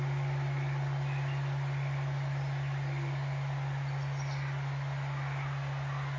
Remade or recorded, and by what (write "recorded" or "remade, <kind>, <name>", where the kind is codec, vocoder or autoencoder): recorded